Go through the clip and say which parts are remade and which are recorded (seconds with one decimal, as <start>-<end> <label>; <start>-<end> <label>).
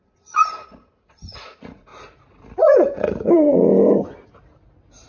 0.0-1.9 remade; 1.9-2.6 recorded; 2.6-3.7 remade; 3.7-5.1 recorded